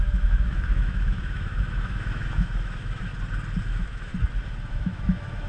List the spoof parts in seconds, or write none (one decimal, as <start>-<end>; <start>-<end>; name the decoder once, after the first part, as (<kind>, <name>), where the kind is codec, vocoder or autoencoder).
0.0-3.1 (autoencoder, DAC-VAE); 3.6-4.1; 4.7-5.5